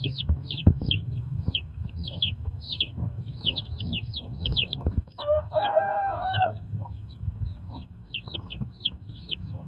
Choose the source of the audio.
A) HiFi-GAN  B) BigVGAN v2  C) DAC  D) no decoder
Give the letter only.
C